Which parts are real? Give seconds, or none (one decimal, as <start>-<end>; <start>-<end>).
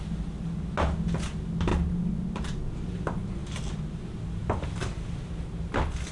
0.0-3.4; 4.0-4.4; 5.2-6.1